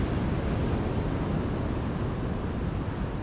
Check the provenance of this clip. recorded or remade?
recorded